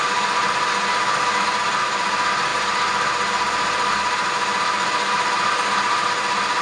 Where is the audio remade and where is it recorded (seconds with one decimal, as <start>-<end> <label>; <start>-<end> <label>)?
0.0-6.6 recorded